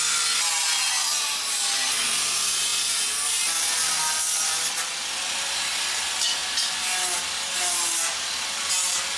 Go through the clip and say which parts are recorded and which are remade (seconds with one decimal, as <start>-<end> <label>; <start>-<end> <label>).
0.0-9.2 recorded